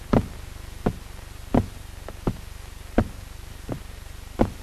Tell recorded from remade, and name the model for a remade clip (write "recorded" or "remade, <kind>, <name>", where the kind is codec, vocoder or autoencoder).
recorded